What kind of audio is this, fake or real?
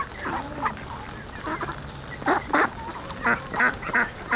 real